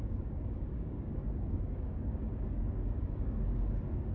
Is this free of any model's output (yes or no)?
no